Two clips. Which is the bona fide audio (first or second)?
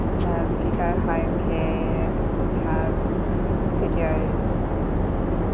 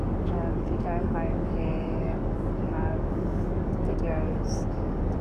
first